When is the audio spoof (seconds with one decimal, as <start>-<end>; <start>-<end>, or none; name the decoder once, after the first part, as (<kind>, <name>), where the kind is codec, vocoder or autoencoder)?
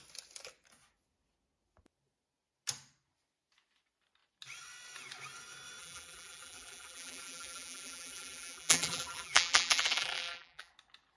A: 5.8-10.7 (vocoder, BigVGAN v2)